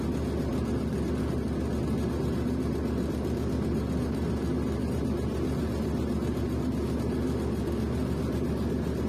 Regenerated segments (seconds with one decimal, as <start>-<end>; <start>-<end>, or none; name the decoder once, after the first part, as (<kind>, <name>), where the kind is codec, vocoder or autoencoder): none